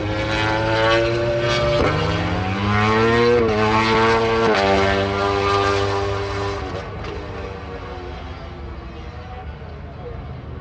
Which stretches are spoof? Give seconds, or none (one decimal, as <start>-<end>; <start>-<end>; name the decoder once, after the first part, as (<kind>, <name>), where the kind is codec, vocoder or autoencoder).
none